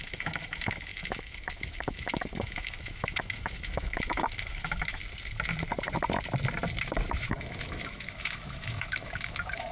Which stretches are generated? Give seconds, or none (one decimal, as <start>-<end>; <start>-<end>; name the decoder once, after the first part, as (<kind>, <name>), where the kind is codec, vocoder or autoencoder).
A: 0.0-5.0 (autoencoder, DAC-VAE); 7.2-9.7